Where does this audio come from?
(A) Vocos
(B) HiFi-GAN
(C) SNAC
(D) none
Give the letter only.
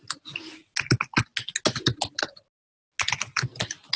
D